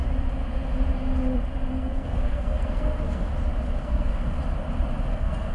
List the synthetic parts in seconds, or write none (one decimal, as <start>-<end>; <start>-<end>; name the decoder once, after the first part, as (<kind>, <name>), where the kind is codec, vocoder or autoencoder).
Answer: 1.7-3.3 (codec, SNAC); 3.8-4.4; 5.1-5.5